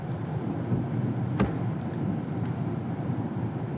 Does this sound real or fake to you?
real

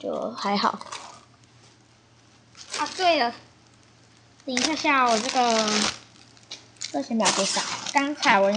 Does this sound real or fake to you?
real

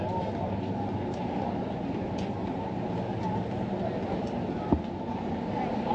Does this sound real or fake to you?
real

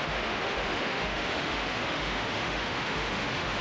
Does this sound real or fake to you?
fake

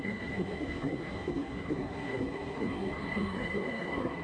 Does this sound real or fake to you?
fake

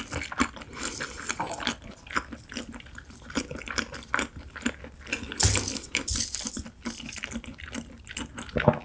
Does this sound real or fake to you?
real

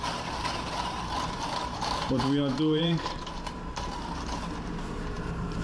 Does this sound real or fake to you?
fake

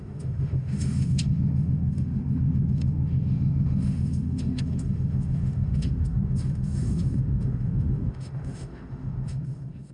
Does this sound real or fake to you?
fake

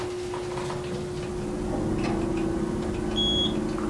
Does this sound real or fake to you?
real